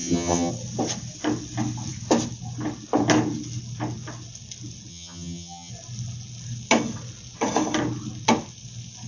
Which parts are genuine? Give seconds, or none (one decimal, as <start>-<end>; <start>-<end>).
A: 0.5-4.9; 5.7-9.1